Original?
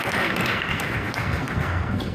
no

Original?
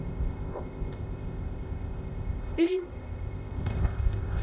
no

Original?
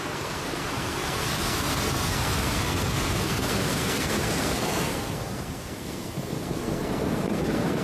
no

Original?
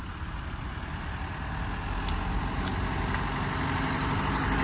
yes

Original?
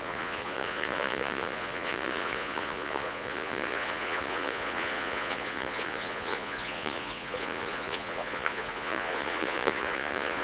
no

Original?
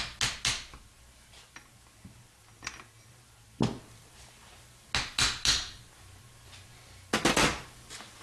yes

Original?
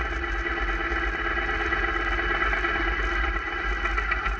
yes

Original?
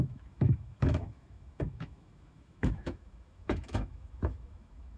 no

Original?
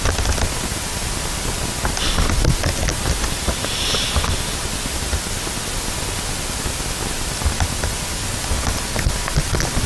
yes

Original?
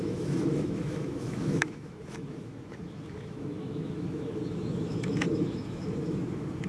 no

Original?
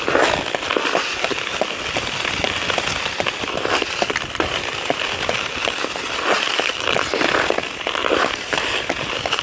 yes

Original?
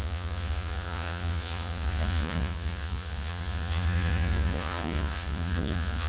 no